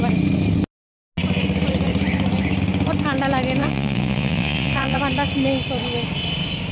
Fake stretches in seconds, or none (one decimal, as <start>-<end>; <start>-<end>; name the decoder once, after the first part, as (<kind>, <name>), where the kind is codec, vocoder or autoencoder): 3.6-5.0 (vocoder, Vocos)